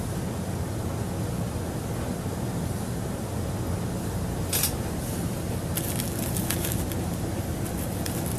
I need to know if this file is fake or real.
real